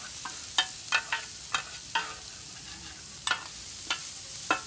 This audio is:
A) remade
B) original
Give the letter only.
B